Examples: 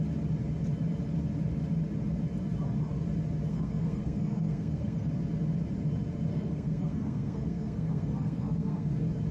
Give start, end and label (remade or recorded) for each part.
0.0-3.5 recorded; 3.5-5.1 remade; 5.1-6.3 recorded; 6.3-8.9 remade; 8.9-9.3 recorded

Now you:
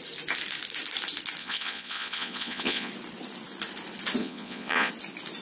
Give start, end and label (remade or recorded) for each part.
0.0-1.4 recorded; 1.4-2.9 remade; 2.9-4.2 recorded; 4.2-4.9 remade; 4.9-5.4 recorded